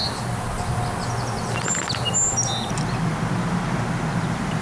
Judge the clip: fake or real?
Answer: real